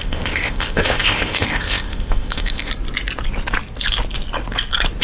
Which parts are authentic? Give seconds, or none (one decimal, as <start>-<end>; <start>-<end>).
2.7-5.0